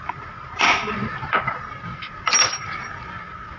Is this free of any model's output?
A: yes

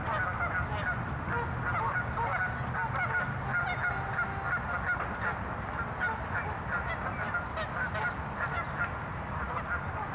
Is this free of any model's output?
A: yes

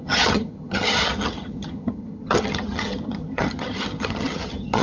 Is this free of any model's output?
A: no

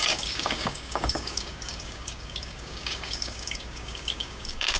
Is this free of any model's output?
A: no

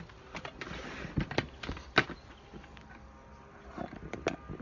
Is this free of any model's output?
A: yes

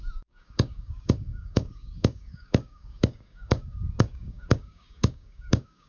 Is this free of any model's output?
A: no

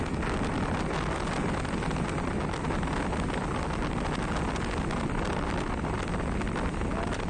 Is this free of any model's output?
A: yes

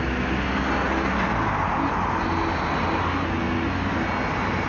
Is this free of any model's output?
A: yes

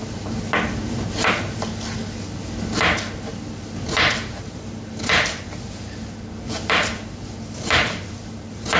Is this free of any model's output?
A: yes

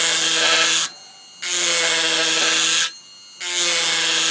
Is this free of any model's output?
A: yes